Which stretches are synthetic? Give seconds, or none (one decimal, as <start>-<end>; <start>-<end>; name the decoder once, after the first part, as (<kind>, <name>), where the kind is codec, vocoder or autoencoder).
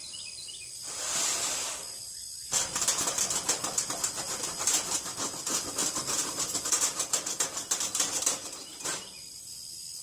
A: none